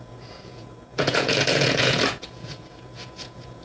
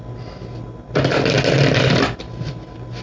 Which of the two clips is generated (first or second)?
first